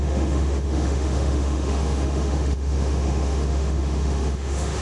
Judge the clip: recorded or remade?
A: remade